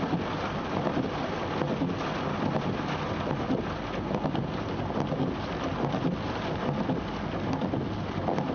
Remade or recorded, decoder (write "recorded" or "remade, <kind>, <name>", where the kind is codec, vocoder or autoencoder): recorded